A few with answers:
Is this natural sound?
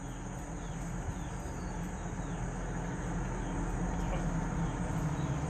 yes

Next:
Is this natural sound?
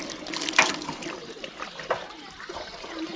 yes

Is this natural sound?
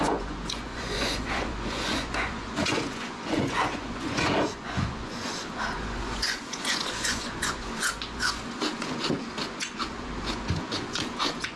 no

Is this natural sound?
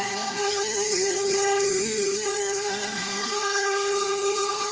no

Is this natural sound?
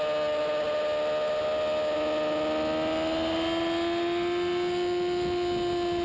yes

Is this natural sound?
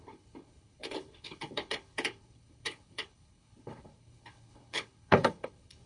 no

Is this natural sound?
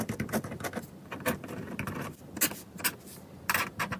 yes